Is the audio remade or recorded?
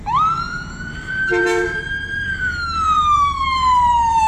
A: remade